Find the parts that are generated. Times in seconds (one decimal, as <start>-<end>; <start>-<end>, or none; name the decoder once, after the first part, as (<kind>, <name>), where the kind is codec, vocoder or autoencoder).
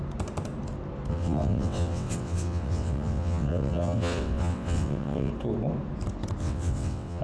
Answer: 1.1-5.3 (vocoder, WaveNeXt); 6.4-7.2